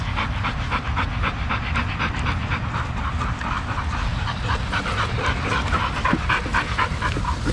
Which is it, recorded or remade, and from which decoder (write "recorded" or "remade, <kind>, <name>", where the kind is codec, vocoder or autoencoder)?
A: recorded